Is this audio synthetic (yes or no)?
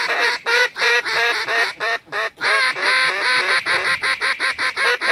yes